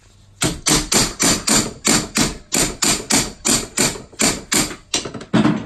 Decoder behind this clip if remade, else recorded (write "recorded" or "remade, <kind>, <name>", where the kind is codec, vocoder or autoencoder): recorded